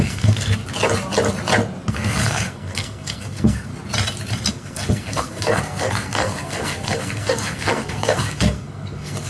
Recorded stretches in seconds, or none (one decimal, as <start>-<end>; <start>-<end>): 0.6-1.9; 3.7-4.5